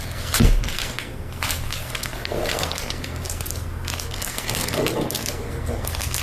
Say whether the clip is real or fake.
fake